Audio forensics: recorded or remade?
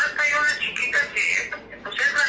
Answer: recorded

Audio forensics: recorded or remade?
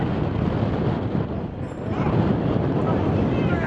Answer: recorded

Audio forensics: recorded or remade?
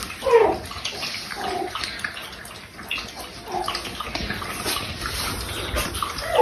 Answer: recorded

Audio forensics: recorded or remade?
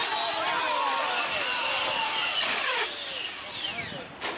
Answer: recorded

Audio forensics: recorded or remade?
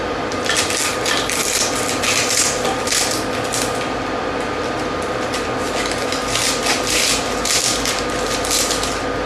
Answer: recorded